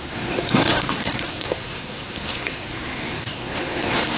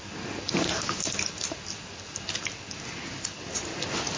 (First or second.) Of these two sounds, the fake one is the first